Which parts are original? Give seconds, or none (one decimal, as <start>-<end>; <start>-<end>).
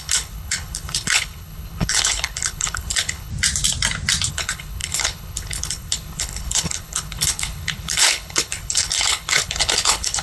3.3-4.3